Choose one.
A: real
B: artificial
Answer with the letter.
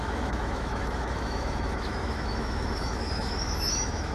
B